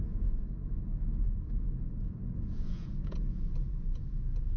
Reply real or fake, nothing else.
fake